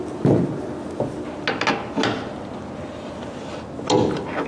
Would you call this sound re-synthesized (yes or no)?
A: no